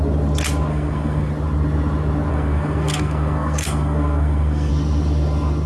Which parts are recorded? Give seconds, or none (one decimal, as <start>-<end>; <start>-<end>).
0.0-0.7; 1.3-2.3; 4.7-5.7